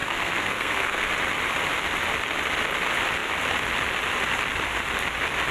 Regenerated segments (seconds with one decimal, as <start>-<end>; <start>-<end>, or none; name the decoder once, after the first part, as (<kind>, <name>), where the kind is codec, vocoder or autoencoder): 0.0-1.1 (codec, SNAC)